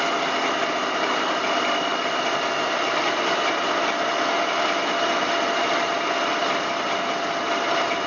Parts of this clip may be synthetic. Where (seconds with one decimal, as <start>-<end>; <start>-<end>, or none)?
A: none